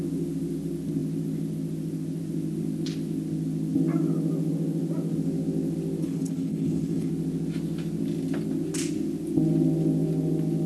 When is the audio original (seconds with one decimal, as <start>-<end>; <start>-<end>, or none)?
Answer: 0.0-6.0; 7.1-10.7